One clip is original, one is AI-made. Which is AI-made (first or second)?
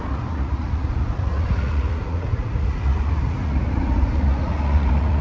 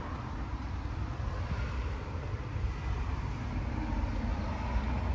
first